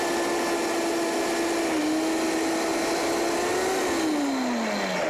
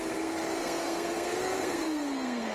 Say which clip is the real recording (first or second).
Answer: first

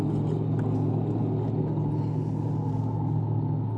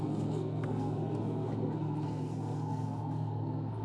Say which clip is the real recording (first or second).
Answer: first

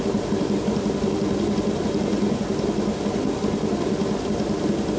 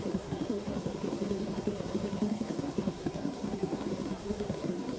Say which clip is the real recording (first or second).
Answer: first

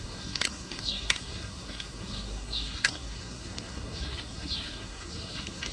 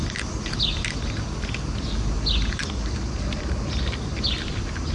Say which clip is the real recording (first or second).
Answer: second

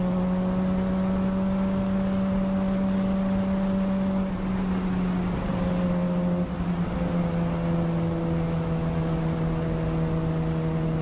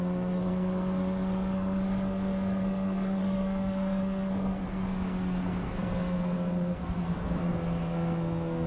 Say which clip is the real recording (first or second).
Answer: first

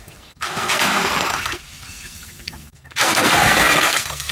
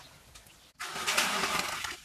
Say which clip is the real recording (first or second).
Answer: second